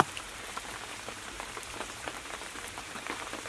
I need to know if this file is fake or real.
fake